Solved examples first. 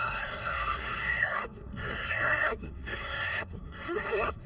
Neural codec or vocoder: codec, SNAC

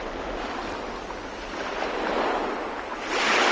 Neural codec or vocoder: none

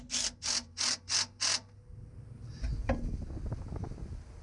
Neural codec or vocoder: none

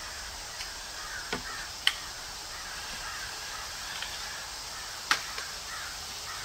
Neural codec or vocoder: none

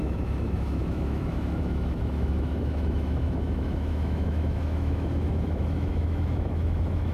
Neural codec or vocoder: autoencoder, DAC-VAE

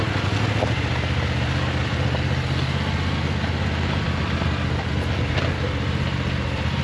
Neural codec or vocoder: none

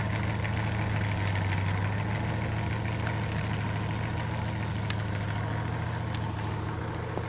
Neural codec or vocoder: none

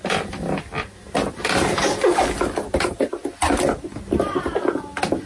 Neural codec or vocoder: none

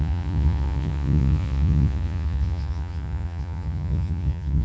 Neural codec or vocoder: vocoder, Vocos